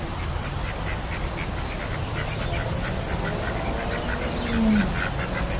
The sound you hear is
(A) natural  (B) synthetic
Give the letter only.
A